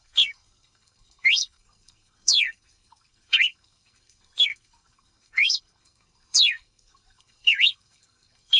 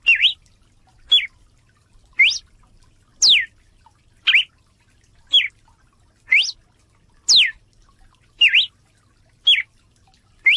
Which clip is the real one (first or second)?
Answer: second